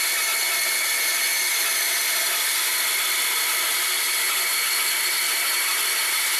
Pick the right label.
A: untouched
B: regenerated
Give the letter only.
A